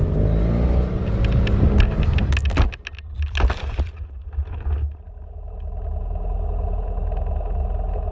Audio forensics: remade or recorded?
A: recorded